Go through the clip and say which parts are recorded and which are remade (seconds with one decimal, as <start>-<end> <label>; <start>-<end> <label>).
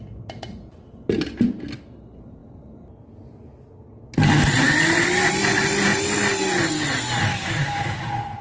0.0-7.3 recorded; 7.3-8.4 remade